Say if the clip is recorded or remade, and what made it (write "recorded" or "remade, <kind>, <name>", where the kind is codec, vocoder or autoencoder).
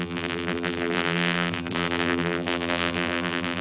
remade, vocoder, BigVGAN v2